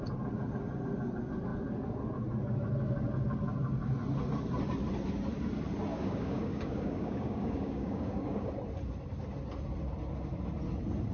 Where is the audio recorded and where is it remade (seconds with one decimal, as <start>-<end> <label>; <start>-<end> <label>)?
0.0-5.9 recorded; 5.9-8.5 remade; 8.5-11.1 recorded